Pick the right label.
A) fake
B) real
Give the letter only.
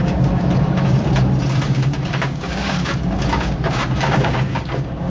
A